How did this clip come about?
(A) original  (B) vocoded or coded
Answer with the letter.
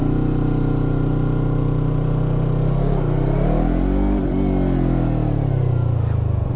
A